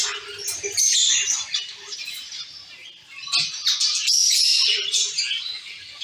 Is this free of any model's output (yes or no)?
yes